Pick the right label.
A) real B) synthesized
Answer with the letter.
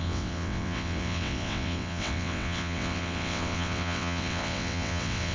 B